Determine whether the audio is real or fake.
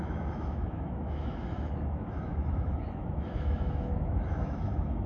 fake